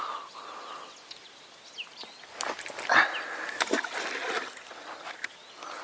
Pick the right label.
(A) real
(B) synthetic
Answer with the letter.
A